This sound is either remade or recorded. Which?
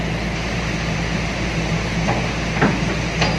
recorded